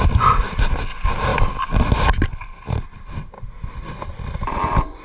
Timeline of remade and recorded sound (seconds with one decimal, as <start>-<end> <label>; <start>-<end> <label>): 0.0-5.0 recorded

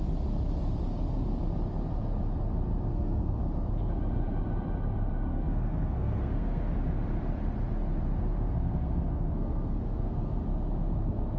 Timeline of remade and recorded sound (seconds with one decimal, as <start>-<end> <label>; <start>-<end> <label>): 0.0-2.9 recorded; 2.9-3.4 remade; 3.4-5.3 recorded; 5.3-6.7 remade; 6.7-8.2 recorded; 8.2-10.4 remade; 10.4-11.4 recorded